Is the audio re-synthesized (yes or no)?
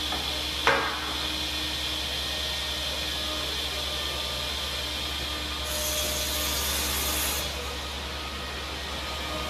no